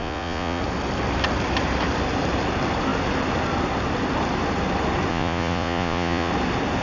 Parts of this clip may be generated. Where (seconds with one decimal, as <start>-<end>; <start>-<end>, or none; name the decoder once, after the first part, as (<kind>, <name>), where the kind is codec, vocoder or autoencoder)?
0.0-0.6 (vocoder, Vocos); 5.1-6.3